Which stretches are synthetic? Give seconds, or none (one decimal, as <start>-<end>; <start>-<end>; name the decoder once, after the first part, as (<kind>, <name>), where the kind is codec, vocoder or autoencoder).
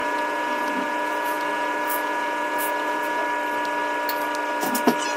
0.0-3.2 (vocoder, Vocos)